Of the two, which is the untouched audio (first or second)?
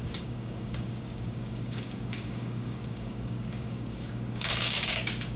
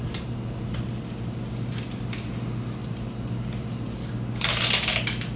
second